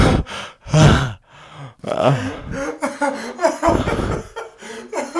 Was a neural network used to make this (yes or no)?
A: no